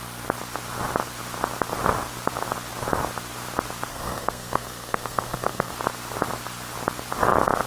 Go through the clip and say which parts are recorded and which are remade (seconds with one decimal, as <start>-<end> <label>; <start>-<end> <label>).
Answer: 0.0-3.9 recorded; 3.9-5.7 remade; 5.7-7.7 recorded